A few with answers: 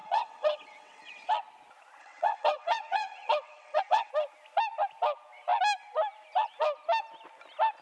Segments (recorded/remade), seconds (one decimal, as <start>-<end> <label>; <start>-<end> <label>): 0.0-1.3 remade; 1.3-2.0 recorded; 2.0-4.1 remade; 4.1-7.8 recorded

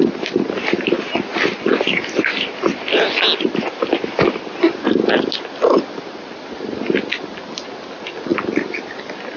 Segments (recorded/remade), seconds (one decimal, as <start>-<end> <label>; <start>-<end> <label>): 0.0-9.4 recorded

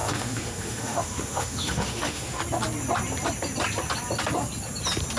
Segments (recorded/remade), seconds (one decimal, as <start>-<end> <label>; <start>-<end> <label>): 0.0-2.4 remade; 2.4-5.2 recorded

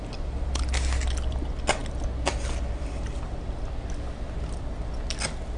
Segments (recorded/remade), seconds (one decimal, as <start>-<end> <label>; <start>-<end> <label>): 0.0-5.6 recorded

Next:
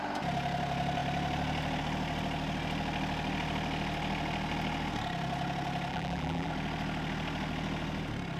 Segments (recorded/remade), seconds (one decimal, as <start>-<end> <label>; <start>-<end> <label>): 0.0-5.9 recorded; 5.9-6.5 remade; 6.5-8.4 recorded

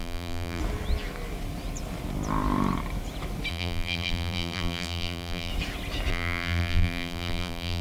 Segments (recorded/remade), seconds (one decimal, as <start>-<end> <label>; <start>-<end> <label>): 0.0-0.6 remade; 0.6-3.5 recorded; 3.5-5.5 remade; 5.5-6.1 recorded; 6.1-7.8 remade

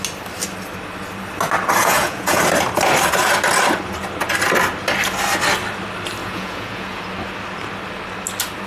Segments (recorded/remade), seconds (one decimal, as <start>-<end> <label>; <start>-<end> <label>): 0.0-1.8 recorded; 1.8-2.4 remade; 2.4-6.2 recorded; 6.2-7.0 remade; 7.0-8.7 recorded

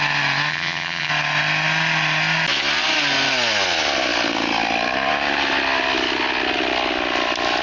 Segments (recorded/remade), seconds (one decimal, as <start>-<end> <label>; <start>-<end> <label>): 0.0-0.5 recorded; 0.5-1.1 remade; 1.1-7.6 recorded